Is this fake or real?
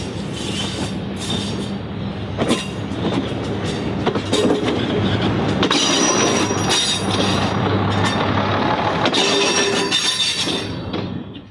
real